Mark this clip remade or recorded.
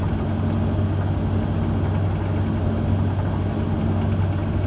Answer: recorded